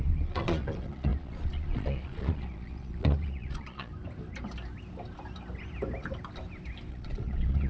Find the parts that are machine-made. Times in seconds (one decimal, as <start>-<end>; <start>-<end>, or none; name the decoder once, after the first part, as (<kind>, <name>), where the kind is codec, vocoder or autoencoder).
0.0-3.9 (vocoder, Vocos); 6.9-7.7